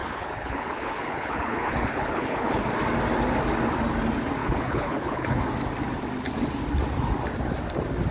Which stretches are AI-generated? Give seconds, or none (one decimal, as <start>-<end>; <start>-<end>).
0.0-2.6; 4.4-5.4